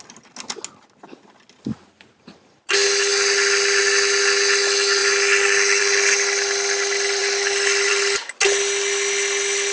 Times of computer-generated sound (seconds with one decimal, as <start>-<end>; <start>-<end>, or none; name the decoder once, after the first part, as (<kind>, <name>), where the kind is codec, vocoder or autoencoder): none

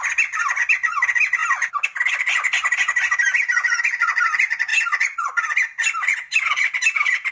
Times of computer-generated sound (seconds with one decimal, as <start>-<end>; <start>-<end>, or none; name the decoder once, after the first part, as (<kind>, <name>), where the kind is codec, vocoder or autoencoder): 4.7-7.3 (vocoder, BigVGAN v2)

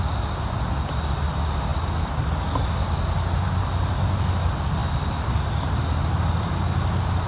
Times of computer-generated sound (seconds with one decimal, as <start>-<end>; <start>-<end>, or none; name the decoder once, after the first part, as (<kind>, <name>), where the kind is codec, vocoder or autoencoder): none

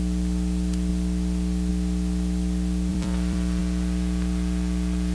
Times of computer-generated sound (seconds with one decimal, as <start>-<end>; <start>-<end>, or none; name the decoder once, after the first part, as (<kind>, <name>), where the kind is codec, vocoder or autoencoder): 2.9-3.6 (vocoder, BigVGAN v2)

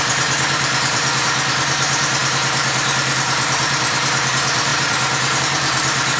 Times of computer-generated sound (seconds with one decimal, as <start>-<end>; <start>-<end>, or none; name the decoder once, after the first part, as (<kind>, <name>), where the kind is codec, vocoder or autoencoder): 0.0-6.2 (vocoder, BigVGAN v2)

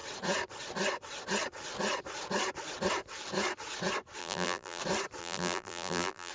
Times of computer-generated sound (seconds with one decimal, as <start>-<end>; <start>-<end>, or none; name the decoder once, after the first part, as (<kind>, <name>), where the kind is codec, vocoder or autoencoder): 4.2-4.8 (vocoder, BigVGAN v2); 5.2-6.3